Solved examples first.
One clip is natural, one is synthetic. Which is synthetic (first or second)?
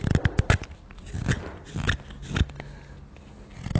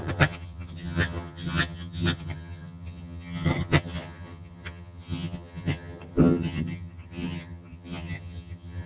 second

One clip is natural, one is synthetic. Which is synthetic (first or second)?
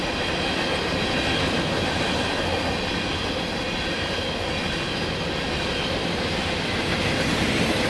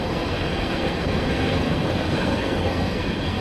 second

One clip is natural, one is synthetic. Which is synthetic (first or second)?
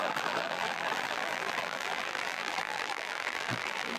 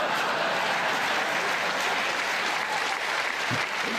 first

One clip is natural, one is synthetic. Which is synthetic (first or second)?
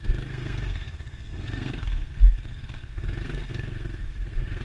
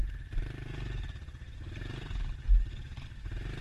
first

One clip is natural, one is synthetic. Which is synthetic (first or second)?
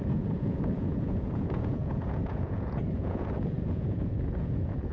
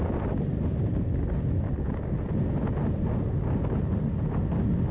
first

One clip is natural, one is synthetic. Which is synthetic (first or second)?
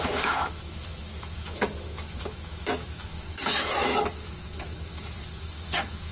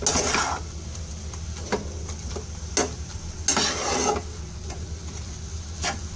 first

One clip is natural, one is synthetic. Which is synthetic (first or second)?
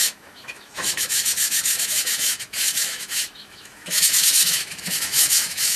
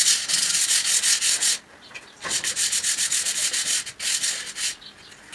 first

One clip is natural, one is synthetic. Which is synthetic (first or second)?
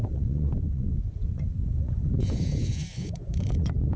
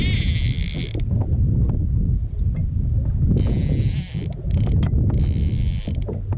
first